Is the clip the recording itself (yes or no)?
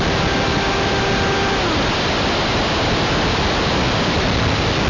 yes